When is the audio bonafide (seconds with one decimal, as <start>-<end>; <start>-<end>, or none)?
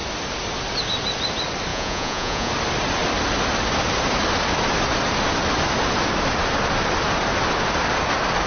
0.0-1.7; 2.5-8.5